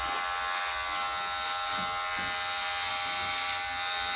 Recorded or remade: recorded